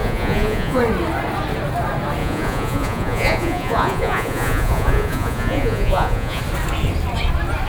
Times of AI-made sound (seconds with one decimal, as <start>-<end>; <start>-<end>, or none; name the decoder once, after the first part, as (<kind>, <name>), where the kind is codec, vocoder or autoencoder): 0.0-0.8 (vocoder, Vocos); 2.2-6.4